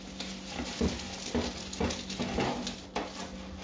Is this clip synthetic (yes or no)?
no